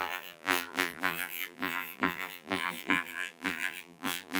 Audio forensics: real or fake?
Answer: fake